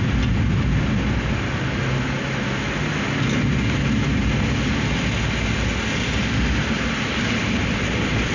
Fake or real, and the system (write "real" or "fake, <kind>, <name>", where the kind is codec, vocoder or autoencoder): real